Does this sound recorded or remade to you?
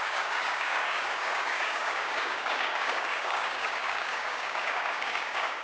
remade